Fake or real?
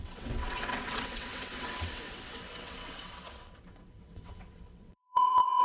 fake